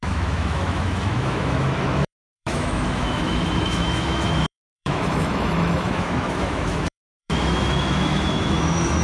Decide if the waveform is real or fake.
fake